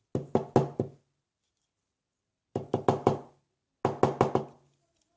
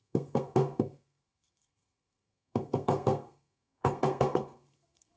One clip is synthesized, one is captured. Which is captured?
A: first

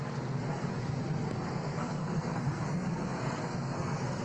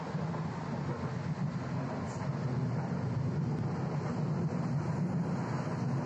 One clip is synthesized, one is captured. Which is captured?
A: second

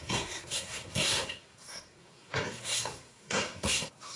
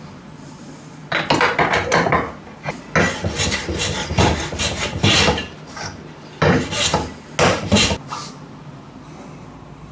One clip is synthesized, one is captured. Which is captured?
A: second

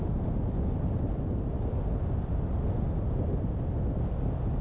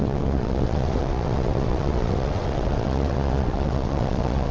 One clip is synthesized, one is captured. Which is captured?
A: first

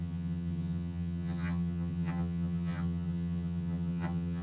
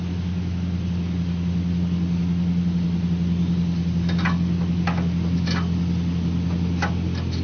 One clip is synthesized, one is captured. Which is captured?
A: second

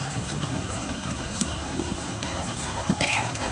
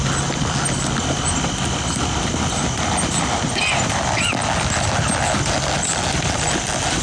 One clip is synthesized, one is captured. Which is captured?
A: second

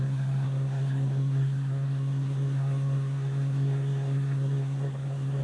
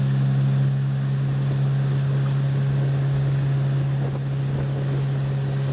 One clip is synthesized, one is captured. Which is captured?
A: second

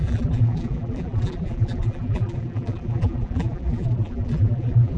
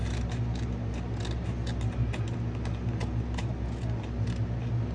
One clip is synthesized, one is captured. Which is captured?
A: second